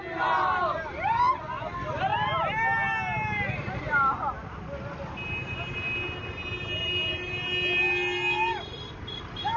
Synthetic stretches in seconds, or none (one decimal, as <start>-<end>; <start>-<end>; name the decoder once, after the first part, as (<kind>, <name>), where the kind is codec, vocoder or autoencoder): none